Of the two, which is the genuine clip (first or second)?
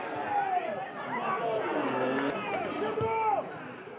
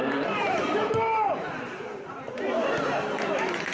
first